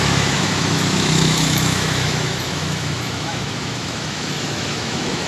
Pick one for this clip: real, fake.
fake